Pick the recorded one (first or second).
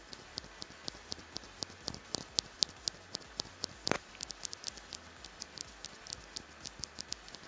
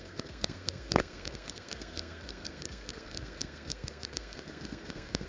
first